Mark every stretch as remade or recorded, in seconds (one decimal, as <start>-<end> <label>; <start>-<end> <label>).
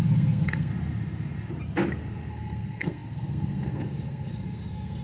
0.0-0.7 remade; 0.7-2.3 recorded; 2.3-5.0 remade